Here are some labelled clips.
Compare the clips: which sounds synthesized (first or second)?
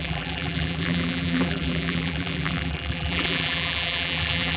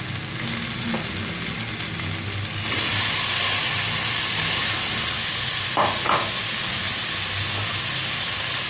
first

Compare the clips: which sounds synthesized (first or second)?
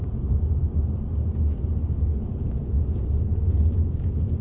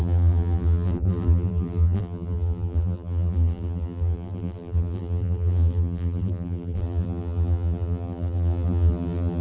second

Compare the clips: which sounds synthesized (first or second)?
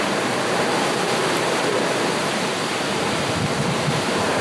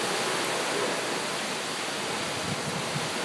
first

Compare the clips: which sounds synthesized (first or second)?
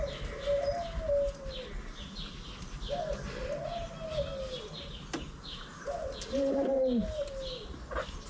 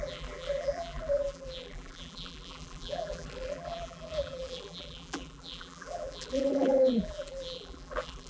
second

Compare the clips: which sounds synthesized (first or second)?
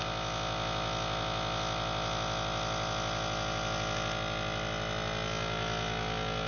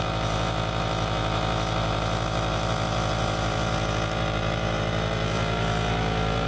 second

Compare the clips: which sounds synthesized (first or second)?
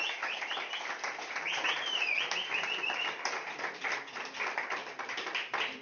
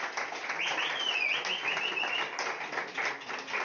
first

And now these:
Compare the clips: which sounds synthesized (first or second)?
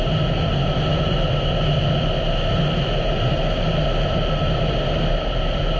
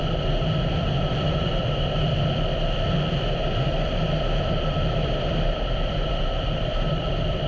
second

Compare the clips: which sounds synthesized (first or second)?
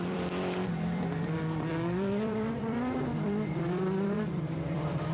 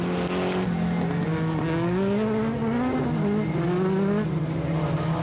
first